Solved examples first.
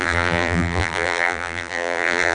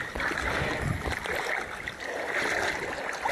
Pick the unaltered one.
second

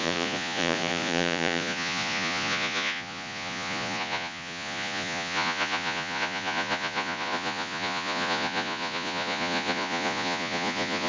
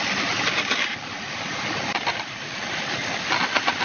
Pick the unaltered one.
second